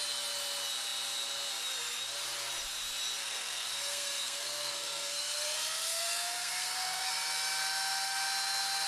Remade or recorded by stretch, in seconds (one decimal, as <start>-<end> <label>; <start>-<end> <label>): 0.0-3.2 recorded; 3.2-7.1 remade; 7.1-8.9 recorded

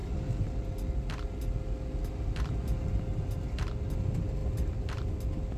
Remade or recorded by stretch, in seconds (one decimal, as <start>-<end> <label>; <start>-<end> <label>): 0.0-5.6 recorded

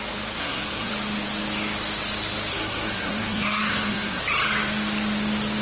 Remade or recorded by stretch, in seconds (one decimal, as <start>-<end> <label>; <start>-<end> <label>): 0.0-0.4 recorded; 0.4-0.9 remade; 0.9-2.5 recorded; 2.5-4.2 remade; 4.2-5.6 recorded

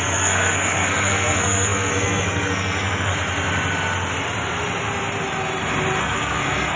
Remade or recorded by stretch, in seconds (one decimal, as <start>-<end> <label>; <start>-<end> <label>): 0.0-3.1 remade; 3.1-6.0 recorded; 6.0-6.8 remade

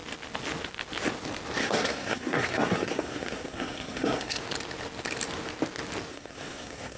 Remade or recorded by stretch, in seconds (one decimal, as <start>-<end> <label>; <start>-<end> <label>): 0.0-1.6 recorded; 1.6-4.4 remade; 4.4-6.1 recorded; 6.1-7.0 remade

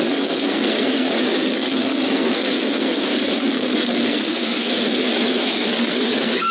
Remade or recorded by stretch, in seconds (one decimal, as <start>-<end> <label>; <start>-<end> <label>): 0.0-6.5 remade

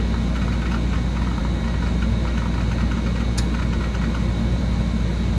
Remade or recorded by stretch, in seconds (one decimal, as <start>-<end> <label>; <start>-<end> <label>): 0.0-5.4 recorded